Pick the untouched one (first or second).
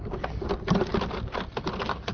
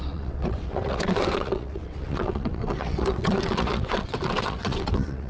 first